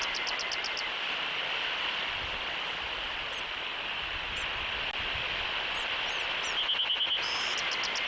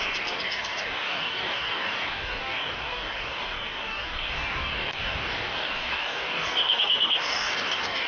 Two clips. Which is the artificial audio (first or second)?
second